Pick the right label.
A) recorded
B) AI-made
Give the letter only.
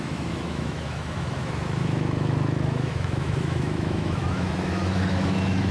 B